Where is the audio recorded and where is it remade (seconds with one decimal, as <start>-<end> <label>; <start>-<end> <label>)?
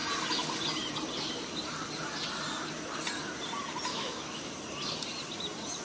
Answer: 0.0-3.9 recorded; 3.9-4.5 remade; 4.5-5.8 recorded